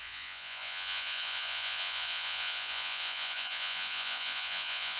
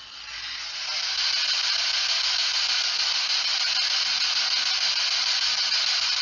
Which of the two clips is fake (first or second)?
first